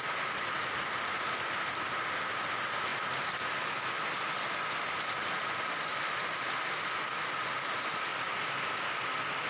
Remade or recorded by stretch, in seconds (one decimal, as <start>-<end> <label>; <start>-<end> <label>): 0.0-9.5 recorded